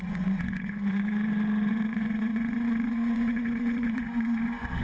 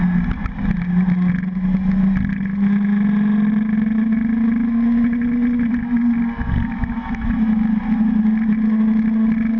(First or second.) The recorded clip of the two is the second